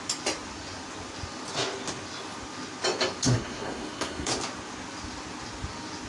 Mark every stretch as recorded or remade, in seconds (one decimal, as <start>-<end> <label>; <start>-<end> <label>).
0.0-3.3 recorded; 3.3-4.3 remade; 4.3-6.1 recorded